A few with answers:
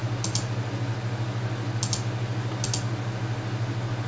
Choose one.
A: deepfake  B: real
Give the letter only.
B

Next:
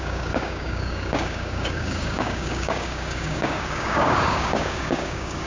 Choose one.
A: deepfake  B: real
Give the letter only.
A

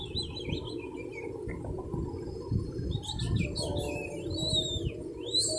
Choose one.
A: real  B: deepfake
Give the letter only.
A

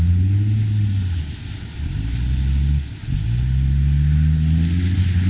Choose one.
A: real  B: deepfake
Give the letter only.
A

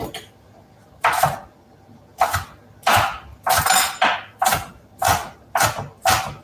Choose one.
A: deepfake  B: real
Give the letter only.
B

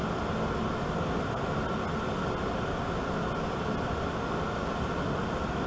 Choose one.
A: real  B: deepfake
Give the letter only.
A